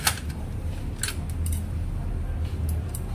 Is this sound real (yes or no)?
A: yes